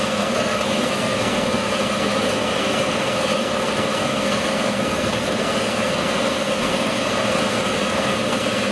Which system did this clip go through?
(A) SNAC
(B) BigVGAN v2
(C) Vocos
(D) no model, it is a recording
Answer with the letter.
A